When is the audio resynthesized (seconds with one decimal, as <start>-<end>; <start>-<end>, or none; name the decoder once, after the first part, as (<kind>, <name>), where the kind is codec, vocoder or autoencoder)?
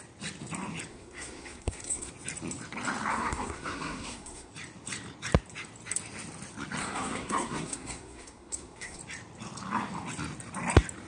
0.9-2.1 (codec, SNAC); 3.1-4.5; 6.8-9.0